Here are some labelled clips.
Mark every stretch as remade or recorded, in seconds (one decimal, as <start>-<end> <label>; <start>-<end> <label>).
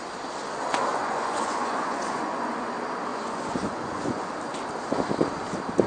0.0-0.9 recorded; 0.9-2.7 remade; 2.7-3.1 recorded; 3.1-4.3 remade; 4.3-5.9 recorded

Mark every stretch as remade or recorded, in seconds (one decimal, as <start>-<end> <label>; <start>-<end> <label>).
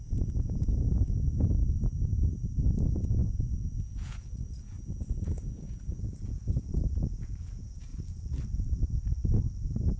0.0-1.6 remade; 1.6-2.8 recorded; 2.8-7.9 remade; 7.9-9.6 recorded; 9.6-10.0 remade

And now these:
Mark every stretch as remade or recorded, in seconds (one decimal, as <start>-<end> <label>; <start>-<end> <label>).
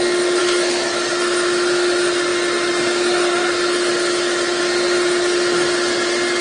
0.0-6.4 recorded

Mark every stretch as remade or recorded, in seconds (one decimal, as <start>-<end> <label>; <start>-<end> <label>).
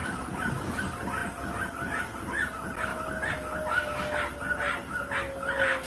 0.0-5.9 recorded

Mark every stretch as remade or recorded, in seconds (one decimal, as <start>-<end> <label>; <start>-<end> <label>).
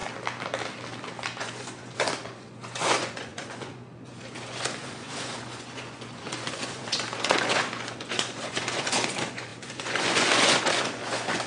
0.0-1.4 recorded; 1.4-11.5 remade